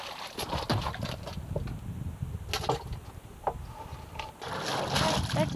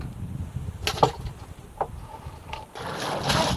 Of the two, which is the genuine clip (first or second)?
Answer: first